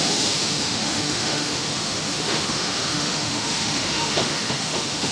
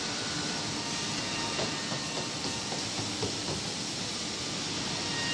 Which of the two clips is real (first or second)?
second